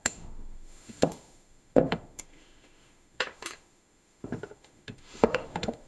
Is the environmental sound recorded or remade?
remade